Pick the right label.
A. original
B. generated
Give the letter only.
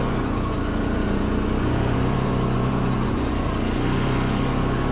B